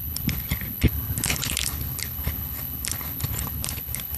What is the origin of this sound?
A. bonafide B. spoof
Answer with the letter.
B